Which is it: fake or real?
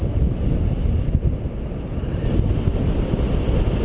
real